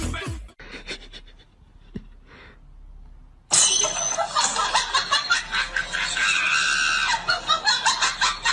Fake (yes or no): no